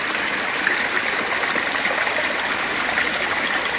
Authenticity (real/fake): real